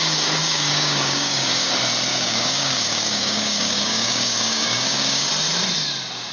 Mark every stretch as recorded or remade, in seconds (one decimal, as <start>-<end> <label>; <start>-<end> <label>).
0.0-0.4 recorded; 0.4-1.7 remade; 1.7-2.1 recorded; 2.1-5.3 remade; 5.3-6.3 recorded